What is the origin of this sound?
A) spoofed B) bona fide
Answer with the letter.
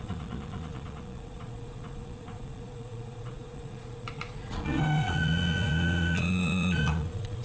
A